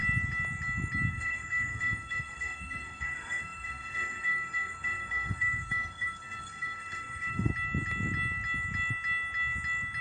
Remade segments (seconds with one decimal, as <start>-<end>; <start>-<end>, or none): 1.1-7.5